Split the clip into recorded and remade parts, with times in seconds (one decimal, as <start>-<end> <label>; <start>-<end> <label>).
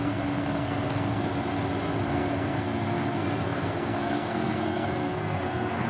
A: 0.0-1.3 remade; 1.3-2.1 recorded; 2.1-5.9 remade